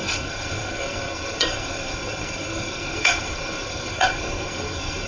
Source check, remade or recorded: remade